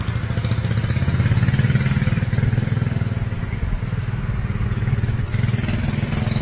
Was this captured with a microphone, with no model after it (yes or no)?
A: yes